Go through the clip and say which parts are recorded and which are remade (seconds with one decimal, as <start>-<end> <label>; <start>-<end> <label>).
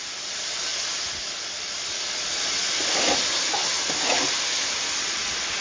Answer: 0.0-5.6 recorded